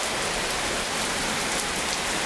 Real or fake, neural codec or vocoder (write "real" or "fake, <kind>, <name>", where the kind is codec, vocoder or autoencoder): real